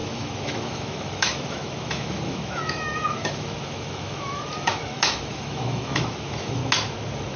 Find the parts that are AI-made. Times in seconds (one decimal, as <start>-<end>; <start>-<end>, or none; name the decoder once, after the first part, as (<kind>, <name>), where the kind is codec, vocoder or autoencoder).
0.0-6.6 (autoencoder, DAC-VAE)